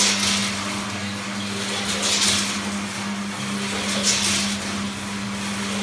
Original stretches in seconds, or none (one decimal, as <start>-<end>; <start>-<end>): 0.0-5.8